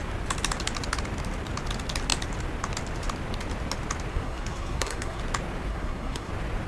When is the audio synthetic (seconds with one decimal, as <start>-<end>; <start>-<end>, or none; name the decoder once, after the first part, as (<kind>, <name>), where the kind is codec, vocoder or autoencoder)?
4.1-5.2 (codec, SNAC); 5.7-6.3

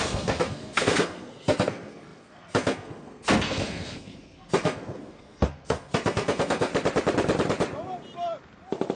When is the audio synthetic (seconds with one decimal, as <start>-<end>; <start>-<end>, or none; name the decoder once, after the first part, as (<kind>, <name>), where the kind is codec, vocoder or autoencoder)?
0.0-6.7 (codec, SNAC)

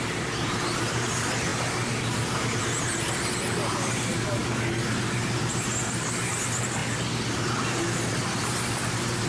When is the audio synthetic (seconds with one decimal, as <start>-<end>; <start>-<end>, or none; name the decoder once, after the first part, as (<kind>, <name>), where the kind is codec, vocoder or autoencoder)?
none

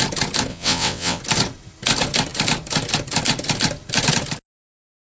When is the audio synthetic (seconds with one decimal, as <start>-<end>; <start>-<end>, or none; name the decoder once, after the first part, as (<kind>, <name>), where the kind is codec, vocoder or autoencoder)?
0.5-1.2 (vocoder, WaveNeXt)

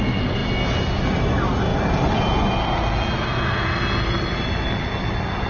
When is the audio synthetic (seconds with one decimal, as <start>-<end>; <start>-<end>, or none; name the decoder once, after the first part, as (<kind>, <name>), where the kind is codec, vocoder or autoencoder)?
none